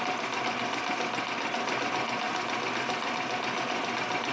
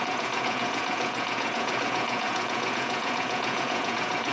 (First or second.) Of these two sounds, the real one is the first